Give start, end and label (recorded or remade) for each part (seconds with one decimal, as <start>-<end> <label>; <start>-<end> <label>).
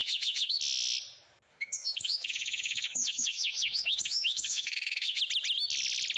0.0-0.6 remade; 0.6-1.5 recorded; 1.5-5.2 remade; 5.2-6.2 recorded